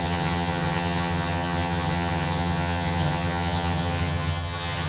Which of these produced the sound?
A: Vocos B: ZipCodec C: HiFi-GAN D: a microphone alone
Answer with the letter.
C